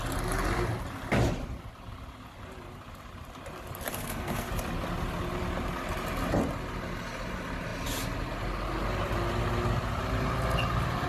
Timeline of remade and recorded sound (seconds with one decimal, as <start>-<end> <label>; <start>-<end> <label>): 0.0-3.9 recorded; 3.9-4.5 remade; 4.5-11.1 recorded